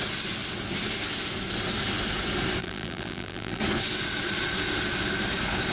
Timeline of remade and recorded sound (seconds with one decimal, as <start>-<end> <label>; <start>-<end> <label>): 0.0-2.6 recorded; 2.6-3.6 remade; 3.6-5.7 recorded